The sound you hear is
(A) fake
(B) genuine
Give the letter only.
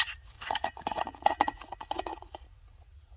A